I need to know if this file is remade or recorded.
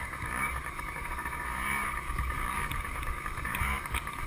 remade